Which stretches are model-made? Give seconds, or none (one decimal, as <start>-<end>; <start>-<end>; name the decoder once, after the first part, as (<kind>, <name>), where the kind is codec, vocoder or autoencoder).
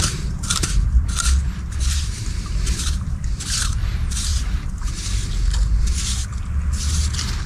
0.0-4.3 (vocoder, BigVGAN v2)